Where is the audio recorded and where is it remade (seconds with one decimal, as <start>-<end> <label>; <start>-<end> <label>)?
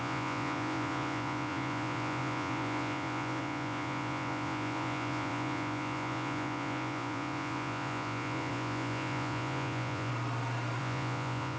0.0-10.1 remade; 10.1-10.8 recorded; 10.8-11.6 remade